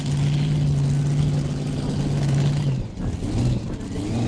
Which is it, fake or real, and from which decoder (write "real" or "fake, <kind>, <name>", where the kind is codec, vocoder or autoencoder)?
real